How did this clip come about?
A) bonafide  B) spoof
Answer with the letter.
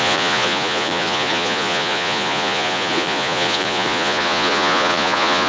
B